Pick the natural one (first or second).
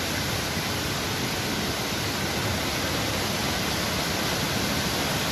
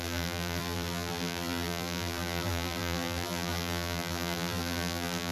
first